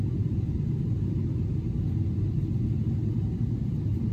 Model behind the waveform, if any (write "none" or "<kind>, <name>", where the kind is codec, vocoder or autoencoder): none